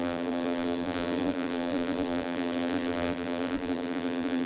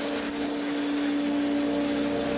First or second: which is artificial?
first